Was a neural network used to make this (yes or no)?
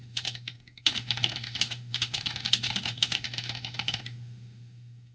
yes